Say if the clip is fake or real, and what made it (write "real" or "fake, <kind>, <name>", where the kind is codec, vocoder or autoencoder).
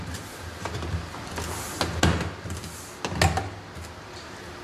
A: real